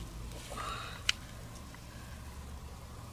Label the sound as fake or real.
real